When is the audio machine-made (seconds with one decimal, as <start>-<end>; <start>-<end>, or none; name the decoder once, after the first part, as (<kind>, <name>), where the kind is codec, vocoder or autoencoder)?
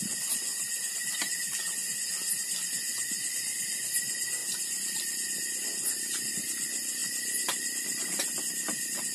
none